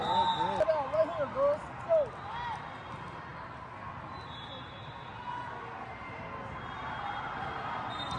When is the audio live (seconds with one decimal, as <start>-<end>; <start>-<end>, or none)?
0.0-8.2

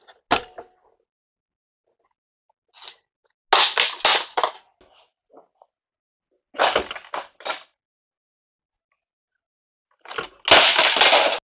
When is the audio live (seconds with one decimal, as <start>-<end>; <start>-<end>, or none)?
0.0-11.5

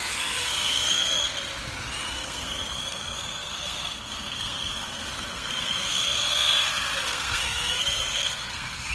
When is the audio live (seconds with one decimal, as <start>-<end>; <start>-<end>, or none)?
1.2-2.1

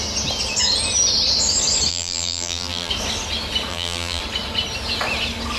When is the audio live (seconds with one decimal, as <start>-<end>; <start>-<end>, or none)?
0.0-1.9; 2.9-3.7; 4.2-5.6

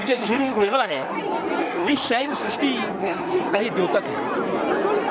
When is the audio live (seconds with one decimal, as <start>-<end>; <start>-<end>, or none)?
1.1-1.6; 2.6-3.0; 3.6-5.1

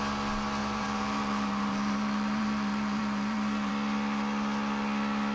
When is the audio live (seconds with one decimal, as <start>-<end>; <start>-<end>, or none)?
0.0-0.6; 3.7-5.3